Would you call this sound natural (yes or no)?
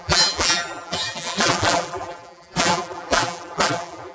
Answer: no